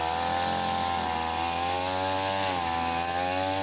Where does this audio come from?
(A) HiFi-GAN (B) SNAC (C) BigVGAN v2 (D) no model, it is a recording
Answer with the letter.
D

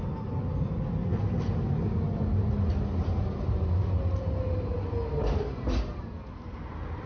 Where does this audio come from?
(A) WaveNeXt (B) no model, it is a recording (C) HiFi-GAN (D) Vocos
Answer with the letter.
B